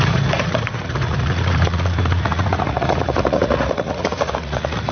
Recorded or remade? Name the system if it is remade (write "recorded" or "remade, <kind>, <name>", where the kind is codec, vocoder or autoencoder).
remade, vocoder, Vocos